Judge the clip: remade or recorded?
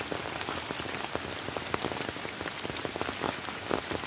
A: recorded